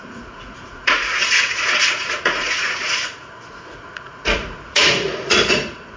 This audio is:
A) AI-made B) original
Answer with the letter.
A